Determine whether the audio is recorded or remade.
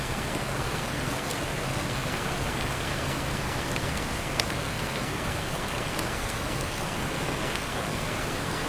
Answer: remade